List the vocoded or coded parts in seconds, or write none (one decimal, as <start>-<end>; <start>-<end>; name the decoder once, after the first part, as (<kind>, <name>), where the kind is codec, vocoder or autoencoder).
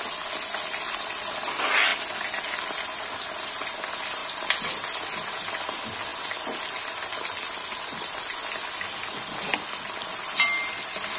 4.2-5.6 (vocoder, BigVGAN v2)